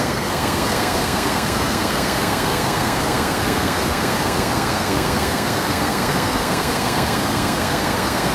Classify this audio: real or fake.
fake